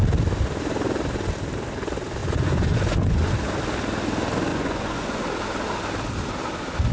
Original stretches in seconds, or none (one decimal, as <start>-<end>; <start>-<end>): 0.0-2.2; 3.3-4.5; 5.2-6.9